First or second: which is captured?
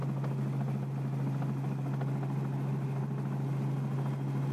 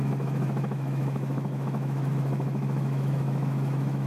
first